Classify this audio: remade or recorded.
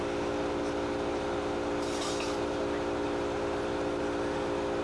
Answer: recorded